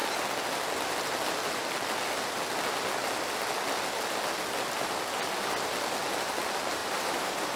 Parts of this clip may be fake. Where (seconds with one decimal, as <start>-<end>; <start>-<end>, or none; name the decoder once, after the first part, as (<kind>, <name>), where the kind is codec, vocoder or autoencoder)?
6.8-7.6 (vocoder, BigVGAN v2)

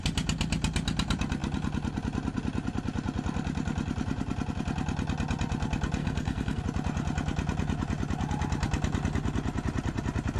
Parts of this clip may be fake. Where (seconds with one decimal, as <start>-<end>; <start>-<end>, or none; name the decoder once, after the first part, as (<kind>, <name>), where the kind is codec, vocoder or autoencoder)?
6.0-6.6 (codec, SNAC)

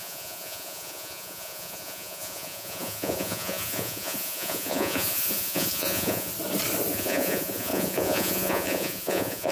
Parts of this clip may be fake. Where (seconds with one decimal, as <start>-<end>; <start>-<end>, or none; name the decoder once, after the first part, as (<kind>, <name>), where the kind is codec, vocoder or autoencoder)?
0.0-6.3 (vocoder, Vocos); 6.9-9.5

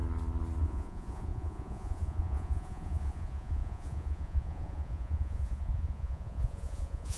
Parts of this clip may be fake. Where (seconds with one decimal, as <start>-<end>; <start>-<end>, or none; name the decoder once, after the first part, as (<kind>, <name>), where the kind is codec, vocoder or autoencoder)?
0.6-7.2 (vocoder, Vocos)

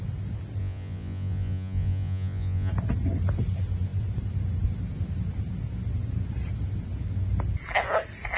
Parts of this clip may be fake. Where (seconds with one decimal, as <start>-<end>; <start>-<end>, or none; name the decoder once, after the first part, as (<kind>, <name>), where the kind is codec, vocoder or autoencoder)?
0.6-2.7 (vocoder, Vocos)